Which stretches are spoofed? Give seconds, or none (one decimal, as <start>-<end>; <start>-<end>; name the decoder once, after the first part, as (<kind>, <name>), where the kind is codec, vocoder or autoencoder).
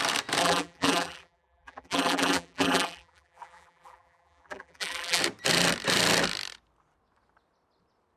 0.4-5.2 (vocoder, BigVGAN v2)